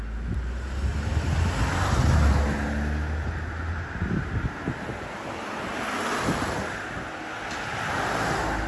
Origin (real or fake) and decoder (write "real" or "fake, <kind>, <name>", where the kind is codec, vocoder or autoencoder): real